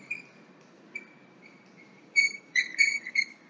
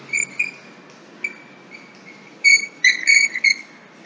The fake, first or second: first